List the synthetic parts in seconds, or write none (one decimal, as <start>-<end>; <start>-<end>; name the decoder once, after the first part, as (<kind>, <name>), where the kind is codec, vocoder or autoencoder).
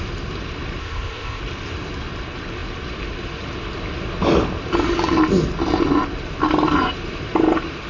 0.8-1.4 (codec, ZipCodec)